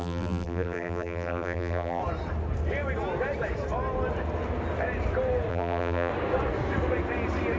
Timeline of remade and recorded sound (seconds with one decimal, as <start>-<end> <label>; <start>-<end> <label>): 0.0-2.0 remade; 2.0-5.5 recorded; 5.5-6.1 remade; 6.1-7.6 recorded